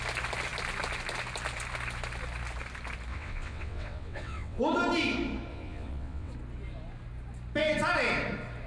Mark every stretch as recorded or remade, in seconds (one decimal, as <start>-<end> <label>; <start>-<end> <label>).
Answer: 0.0-3.1 recorded; 3.1-4.6 remade; 4.6-5.5 recorded; 5.5-6.3 remade; 6.3-8.7 recorded